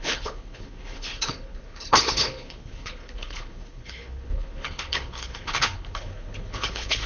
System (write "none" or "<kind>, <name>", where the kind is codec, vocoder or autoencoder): codec, HILCodec